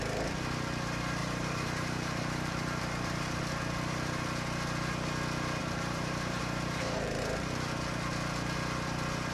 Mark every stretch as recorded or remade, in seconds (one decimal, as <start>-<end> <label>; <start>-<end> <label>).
0.0-1.2 recorded; 1.2-3.4 remade; 3.4-5.6 recorded; 5.6-7.2 remade; 7.2-9.3 recorded